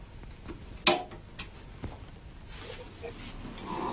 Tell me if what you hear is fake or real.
real